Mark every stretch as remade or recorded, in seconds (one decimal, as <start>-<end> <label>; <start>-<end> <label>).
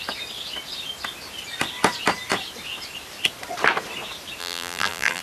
0.0-4.4 recorded; 4.4-5.2 remade